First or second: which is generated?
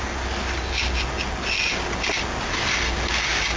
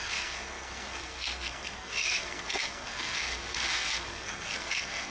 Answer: second